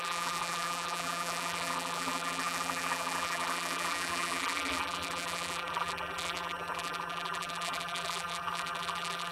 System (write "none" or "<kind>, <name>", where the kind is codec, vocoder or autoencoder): vocoder, BigVGAN v2